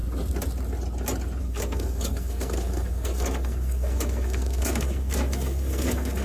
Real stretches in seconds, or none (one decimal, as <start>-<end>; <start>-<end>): 0.0-1.4